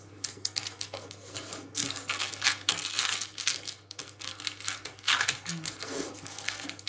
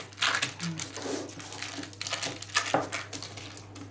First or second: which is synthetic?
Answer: first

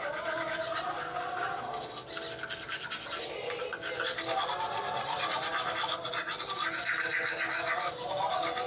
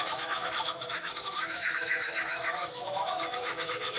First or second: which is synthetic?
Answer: second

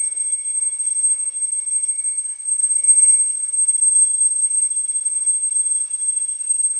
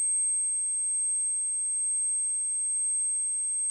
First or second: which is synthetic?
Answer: first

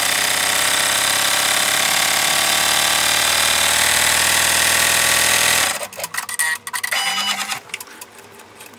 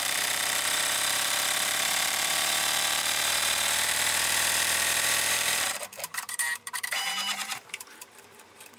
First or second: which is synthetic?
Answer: second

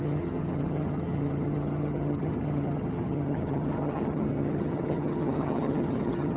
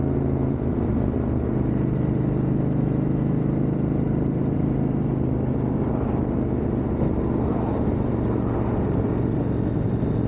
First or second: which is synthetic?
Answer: first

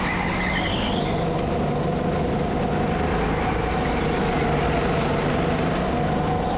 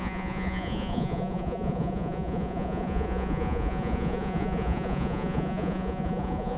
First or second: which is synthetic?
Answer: second